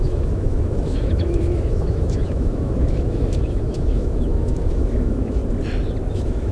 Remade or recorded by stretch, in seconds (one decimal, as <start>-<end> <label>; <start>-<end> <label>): 0.0-5.4 remade; 5.4-6.1 recorded; 6.1-6.5 remade